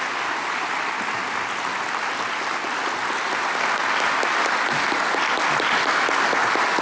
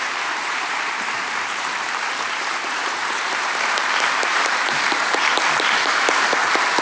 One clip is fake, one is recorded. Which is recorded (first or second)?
first